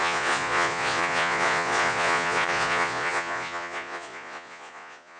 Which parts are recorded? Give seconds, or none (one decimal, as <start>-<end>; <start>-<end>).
none